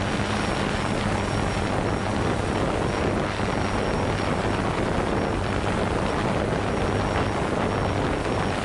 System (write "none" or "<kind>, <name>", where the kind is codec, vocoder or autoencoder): none